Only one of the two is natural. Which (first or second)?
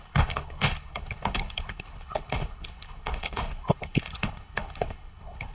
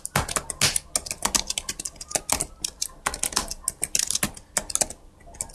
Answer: second